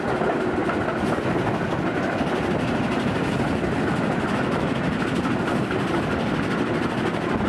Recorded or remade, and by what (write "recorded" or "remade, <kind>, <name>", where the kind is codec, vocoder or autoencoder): recorded